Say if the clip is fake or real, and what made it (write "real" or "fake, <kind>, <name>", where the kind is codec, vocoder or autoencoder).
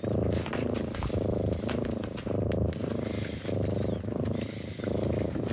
real